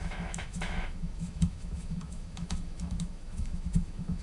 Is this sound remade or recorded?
remade